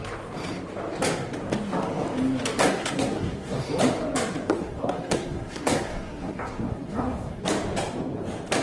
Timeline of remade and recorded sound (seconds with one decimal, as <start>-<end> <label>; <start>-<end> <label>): 0.0-2.6 recorded; 2.6-3.7 remade; 3.7-4.6 recorded; 4.6-7.4 remade; 7.4-8.6 recorded